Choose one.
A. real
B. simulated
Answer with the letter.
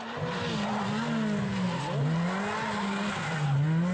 A